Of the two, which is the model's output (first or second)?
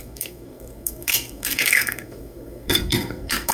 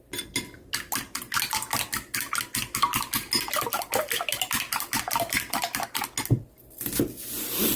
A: first